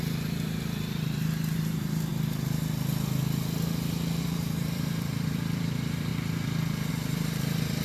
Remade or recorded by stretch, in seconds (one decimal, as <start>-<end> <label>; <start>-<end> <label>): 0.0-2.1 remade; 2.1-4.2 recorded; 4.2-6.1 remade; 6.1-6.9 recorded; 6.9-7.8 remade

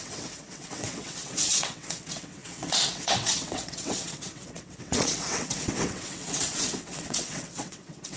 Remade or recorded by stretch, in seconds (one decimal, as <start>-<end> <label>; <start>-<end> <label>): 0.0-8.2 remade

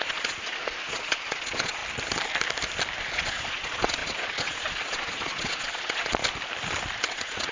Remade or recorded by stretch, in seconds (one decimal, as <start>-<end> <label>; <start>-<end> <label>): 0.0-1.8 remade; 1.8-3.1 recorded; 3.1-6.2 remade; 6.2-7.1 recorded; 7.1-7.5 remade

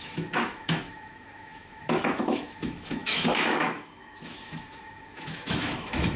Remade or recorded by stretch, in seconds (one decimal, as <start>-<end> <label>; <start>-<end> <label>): 0.0-6.2 remade

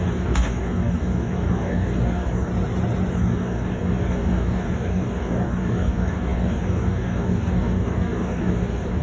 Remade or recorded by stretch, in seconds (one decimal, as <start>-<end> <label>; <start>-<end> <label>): 0.0-2.5 remade; 2.5-3.1 recorded; 3.1-9.0 remade

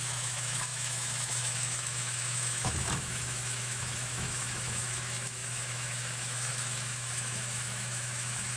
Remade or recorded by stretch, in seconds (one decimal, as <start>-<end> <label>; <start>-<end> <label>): 0.0-8.6 remade